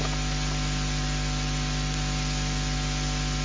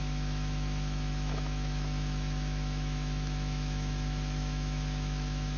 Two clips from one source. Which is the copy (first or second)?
second